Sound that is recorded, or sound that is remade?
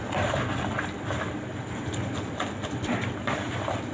recorded